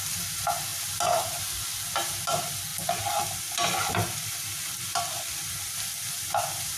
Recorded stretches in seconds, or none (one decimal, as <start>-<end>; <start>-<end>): 0.0-6.8